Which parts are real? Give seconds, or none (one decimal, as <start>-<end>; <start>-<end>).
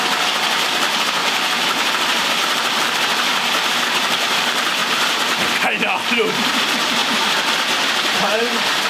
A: 4.8-6.5